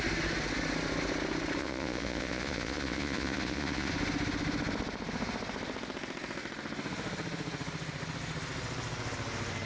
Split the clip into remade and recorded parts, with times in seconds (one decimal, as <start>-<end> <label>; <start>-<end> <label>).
0.0-1.6 recorded; 1.6-3.9 remade; 3.9-9.7 recorded

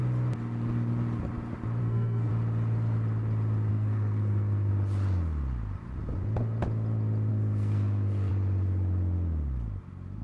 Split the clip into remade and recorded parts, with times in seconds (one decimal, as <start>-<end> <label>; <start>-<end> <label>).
0.0-1.8 recorded; 1.8-2.3 remade; 2.3-3.7 recorded; 3.7-4.7 remade; 4.7-7.3 recorded; 7.3-8.3 remade; 8.3-10.2 recorded

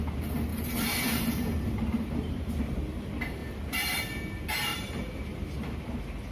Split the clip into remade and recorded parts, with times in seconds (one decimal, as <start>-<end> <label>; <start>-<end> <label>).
0.0-0.5 recorded; 0.5-2.6 remade; 2.6-4.7 recorded; 4.7-5.7 remade; 5.7-6.3 recorded

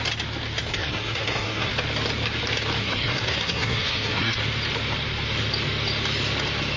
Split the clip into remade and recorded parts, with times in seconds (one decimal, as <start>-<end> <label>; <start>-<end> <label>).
0.0-0.7 recorded; 0.7-1.7 remade; 1.7-2.8 recorded; 2.8-4.4 remade; 4.4-6.8 recorded

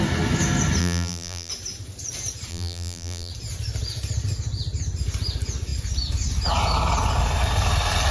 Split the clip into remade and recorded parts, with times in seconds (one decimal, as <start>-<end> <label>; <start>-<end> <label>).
0.0-0.8 recorded; 0.8-1.5 remade; 1.5-2.5 recorded; 2.5-3.3 remade; 3.3-8.1 recorded

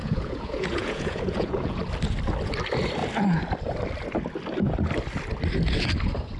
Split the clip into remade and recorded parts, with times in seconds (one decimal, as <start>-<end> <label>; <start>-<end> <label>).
0.0-1.8 remade; 1.8-6.4 recorded